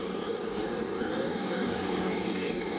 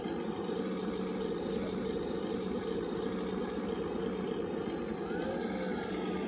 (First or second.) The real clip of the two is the second